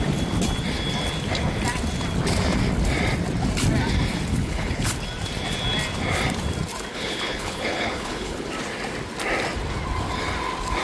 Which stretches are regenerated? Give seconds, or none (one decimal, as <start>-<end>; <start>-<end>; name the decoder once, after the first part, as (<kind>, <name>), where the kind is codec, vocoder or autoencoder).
4.3-4.9 (codec, HILCodec); 6.9-8.5